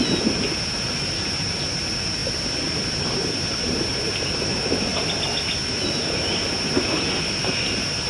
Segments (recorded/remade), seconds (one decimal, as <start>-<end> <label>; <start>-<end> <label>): 0.0-8.1 recorded